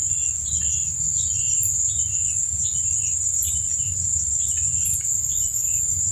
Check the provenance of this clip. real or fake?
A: real